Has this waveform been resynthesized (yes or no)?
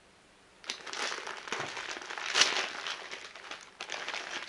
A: no